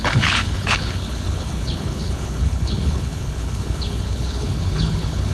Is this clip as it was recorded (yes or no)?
no